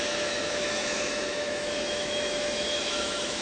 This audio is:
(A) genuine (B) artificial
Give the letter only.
B